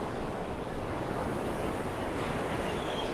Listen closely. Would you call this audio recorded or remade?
remade